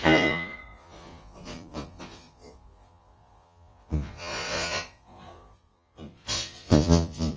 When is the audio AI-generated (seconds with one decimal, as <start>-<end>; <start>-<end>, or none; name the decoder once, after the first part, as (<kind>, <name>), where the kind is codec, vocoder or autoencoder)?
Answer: 0.0-7.4 (vocoder, Vocos)